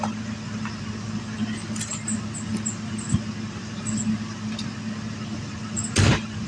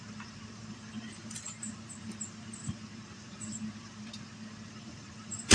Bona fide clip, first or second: first